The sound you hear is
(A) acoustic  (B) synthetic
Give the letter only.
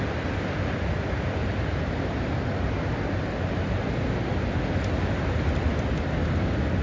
A